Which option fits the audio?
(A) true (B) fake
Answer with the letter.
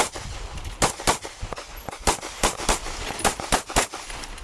A